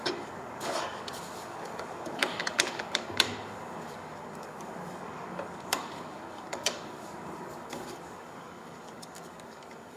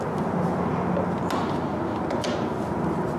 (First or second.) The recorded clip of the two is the second